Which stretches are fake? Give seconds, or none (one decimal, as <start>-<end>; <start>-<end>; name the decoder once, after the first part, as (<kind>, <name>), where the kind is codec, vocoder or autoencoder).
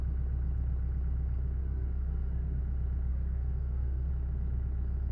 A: 1.6-2.6 (codec, SNAC); 3.1-4.1